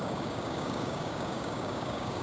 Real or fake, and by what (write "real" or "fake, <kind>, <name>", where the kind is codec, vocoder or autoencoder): fake, codec, DAC